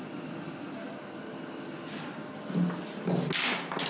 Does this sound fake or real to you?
real